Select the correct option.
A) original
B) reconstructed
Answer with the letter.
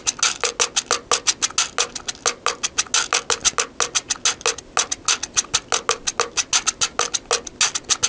A